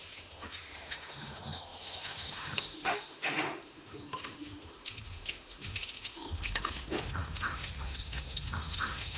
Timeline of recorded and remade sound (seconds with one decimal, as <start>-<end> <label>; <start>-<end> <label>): 0.0-9.2 remade